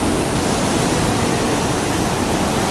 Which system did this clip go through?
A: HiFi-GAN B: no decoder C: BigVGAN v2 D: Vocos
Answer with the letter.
B